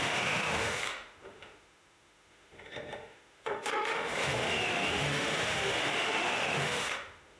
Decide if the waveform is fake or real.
fake